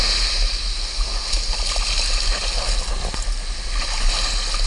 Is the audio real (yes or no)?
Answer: yes